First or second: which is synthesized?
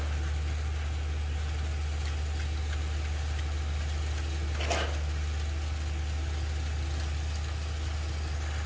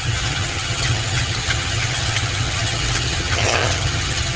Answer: second